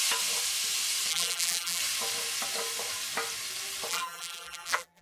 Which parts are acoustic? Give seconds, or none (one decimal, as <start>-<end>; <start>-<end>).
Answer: 0.0-1.1; 1.8-3.9

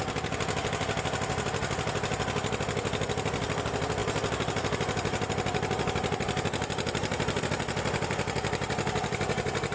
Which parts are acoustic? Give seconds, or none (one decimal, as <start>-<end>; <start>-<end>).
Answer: 0.0-9.7